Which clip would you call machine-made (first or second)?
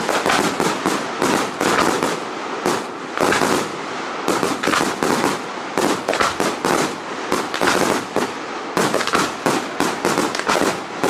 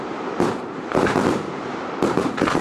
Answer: second